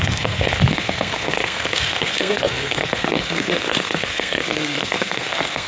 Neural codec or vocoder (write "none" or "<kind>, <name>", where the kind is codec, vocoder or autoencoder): codec, SNAC